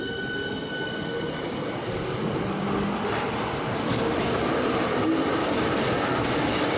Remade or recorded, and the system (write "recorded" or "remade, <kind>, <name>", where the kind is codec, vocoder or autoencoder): recorded